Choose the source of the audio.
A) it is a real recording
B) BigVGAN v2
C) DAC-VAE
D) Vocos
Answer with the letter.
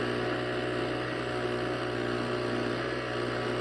A